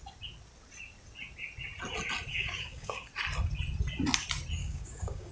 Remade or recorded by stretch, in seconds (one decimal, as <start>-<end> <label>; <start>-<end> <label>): 0.0-2.3 recorded; 2.3-3.1 remade; 3.1-4.6 recorded; 4.6-5.3 remade